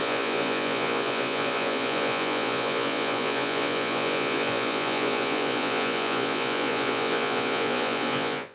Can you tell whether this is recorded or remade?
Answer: remade